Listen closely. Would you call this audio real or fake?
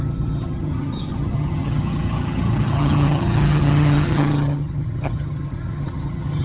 fake